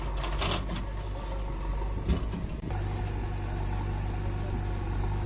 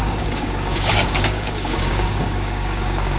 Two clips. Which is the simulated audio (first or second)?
second